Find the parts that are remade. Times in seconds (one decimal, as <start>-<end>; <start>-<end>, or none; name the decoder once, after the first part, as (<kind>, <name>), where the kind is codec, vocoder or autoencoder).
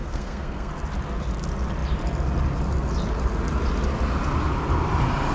0.0-0.7 (codec, SNAC)